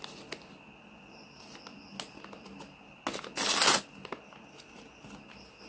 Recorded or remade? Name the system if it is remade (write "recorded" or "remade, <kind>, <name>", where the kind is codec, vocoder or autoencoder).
recorded